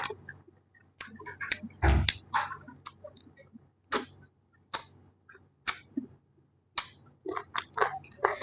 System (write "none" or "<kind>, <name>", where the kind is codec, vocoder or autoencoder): none